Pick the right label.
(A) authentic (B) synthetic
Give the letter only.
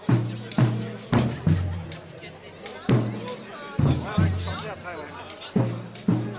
A